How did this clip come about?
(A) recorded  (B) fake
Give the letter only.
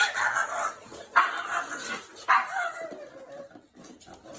A